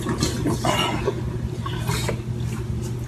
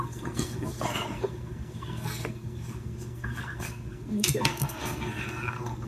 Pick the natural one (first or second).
first